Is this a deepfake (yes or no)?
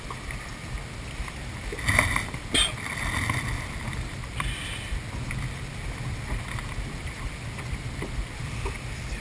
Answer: no